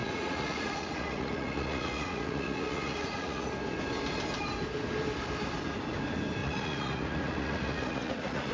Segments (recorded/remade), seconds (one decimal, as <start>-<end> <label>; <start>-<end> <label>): 0.0-3.5 remade; 3.5-6.4 recorded; 6.4-8.5 remade